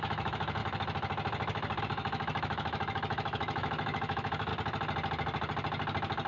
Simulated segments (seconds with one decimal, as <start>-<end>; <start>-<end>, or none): 0.0-0.6; 1.8-4.5